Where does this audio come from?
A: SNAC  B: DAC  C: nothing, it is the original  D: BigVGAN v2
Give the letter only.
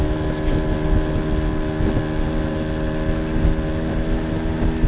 C